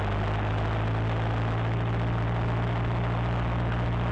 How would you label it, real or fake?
real